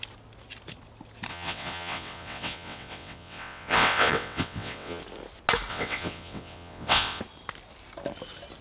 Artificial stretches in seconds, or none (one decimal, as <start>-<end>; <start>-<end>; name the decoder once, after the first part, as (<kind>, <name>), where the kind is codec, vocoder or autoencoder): 1.3-5.0 (vocoder, WaveNeXt); 5.7-7.2